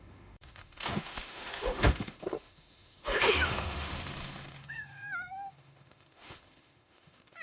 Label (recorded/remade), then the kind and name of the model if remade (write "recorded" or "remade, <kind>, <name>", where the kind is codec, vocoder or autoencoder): remade, autoencoder, DAC-VAE